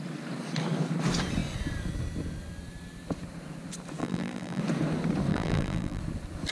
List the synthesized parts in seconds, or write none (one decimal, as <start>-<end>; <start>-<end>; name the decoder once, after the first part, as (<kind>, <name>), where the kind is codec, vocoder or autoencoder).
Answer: 4.0-4.6 (vocoder, BigVGAN v2); 5.3-6.0

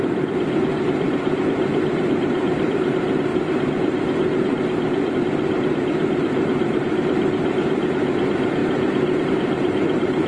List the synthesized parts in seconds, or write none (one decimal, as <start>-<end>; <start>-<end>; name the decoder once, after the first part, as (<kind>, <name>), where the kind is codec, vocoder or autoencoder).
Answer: 0.0-3.3 (vocoder, BigVGAN v2); 5.1-8.6; 9.2-10.3

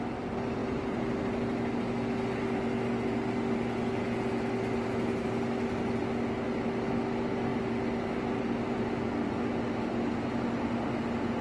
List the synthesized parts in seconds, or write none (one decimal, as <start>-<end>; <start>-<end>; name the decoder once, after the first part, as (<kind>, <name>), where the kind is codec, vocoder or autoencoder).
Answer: none

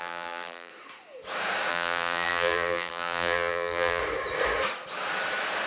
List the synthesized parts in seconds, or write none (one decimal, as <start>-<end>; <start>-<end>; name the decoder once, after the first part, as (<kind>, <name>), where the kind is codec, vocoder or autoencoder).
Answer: 0.0-0.7 (vocoder, BigVGAN v2); 1.7-4.0

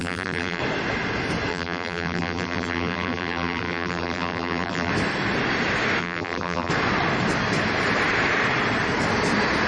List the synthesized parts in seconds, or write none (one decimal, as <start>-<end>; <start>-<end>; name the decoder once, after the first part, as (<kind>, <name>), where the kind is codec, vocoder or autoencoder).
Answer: 0.0-0.6 (vocoder, BigVGAN v2); 1.5-4.9; 6.0-6.7